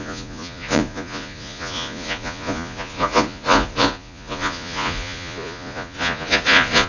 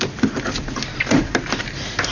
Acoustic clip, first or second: second